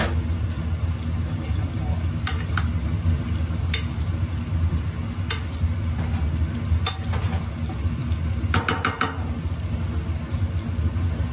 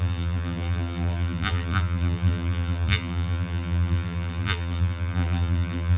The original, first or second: first